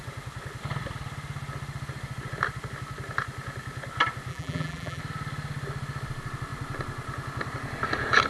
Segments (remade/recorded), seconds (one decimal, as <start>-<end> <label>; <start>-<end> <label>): 0.0-4.3 recorded; 4.3-5.0 remade; 5.0-8.3 recorded